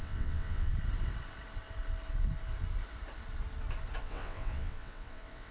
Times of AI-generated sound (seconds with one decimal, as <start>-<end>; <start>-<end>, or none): 0.0-0.7; 4.0-5.5